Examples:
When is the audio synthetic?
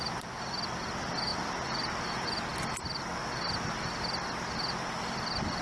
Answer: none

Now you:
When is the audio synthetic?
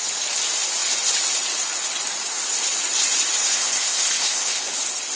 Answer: 3.5-4.7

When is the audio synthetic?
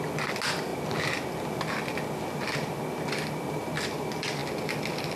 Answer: none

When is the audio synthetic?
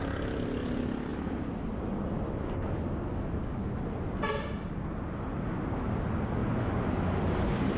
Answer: none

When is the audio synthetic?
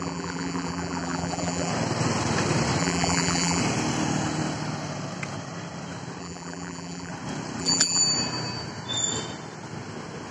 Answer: 0.0-1.7; 2.8-3.6; 6.2-7.1; 7.6-8.0